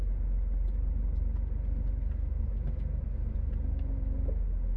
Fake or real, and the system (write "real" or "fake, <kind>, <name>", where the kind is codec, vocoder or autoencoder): real